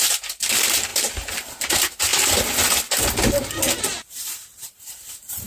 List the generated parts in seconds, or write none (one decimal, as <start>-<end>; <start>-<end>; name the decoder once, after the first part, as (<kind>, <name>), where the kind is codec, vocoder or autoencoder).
0.0-2.1 (vocoder, BigVGAN v2); 3.4-5.5